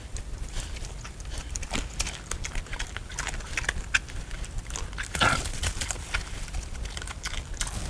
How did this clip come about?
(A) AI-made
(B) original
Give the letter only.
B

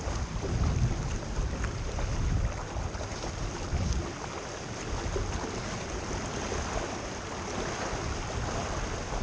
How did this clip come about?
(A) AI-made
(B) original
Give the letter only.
B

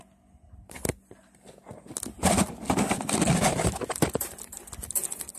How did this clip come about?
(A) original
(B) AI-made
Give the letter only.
A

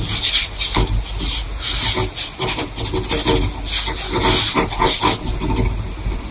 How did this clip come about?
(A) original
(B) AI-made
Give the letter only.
A